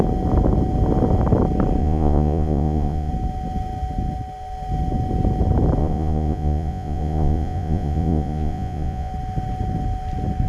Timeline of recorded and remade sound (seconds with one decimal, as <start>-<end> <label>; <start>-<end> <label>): 0.0-1.8 recorded; 1.8-3.1 remade; 3.1-5.8 recorded; 5.8-9.1 remade; 9.1-10.5 recorded